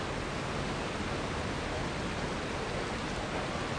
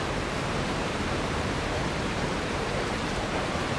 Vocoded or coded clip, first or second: second